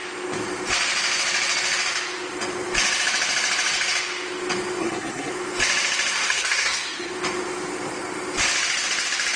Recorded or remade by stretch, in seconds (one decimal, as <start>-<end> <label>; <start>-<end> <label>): 0.0-4.8 recorded; 4.8-5.3 remade; 5.3-6.1 recorded; 6.1-7.1 remade; 7.1-9.4 recorded